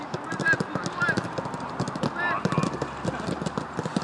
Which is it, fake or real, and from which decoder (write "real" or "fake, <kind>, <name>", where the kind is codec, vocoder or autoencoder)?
real